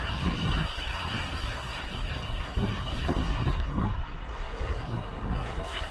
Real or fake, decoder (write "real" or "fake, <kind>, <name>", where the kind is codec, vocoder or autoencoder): fake, codec, SNAC